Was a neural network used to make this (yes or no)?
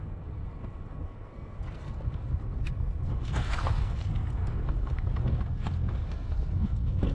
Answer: yes